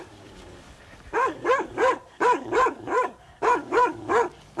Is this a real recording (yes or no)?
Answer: no